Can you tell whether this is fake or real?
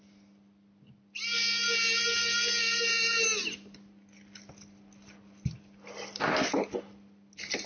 real